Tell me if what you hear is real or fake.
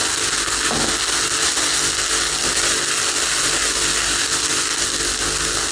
real